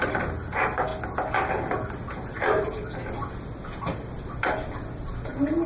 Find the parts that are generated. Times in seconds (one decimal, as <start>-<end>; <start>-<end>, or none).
none